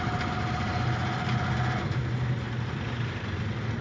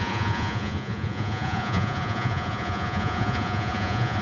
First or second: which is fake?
second